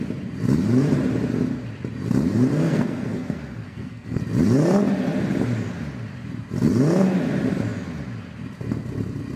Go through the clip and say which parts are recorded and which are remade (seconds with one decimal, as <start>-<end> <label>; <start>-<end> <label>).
0.0-2.5 recorded; 2.5-4.2 remade; 4.2-9.4 recorded